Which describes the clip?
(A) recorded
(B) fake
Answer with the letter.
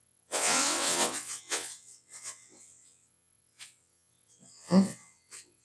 B